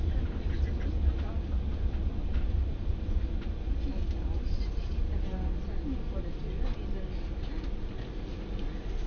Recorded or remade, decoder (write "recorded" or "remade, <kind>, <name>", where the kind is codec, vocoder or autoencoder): recorded